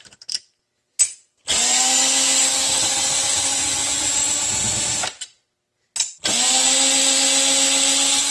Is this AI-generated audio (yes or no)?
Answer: no